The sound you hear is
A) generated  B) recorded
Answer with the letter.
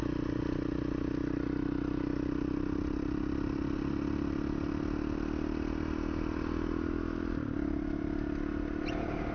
B